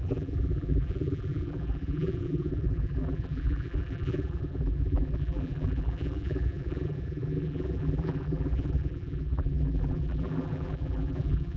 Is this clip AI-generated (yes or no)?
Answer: yes